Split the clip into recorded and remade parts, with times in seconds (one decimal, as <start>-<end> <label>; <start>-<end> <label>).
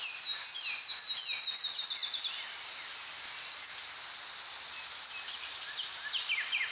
0.0-6.7 recorded